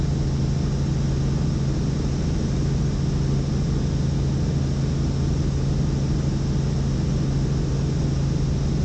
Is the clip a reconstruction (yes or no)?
no